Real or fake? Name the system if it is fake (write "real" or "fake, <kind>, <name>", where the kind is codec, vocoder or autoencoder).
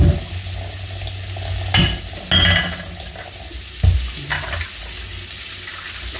real